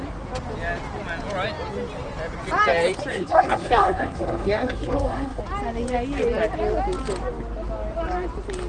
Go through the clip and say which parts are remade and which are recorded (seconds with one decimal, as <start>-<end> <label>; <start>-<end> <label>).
0.0-3.1 recorded; 3.1-5.4 remade; 5.4-8.7 recorded

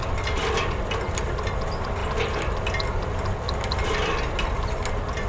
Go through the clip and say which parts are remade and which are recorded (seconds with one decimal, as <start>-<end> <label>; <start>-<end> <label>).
0.0-5.3 recorded

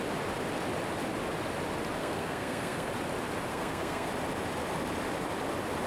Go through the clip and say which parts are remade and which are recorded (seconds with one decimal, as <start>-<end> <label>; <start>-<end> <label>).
0.0-2.0 recorded; 2.0-2.9 remade; 2.9-3.5 recorded; 3.5-4.1 remade; 4.1-5.9 recorded

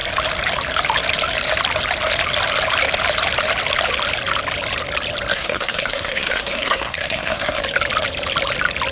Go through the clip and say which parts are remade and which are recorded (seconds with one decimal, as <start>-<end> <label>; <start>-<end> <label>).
0.0-5.3 recorded; 5.3-7.6 remade; 7.6-8.9 recorded

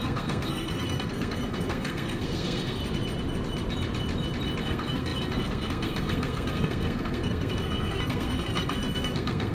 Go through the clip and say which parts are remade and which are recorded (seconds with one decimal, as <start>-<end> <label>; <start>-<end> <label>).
0.0-2.8 remade; 2.8-4.6 recorded; 4.6-9.5 remade

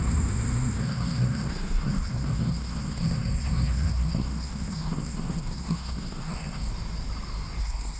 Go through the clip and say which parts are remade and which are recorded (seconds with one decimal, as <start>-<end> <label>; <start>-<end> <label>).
0.0-6.7 remade; 6.7-7.6 recorded; 7.6-8.0 remade

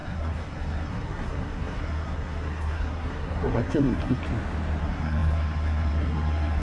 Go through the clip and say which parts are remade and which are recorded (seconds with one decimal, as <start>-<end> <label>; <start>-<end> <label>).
0.0-4.2 remade; 4.2-4.8 recorded; 4.8-6.6 remade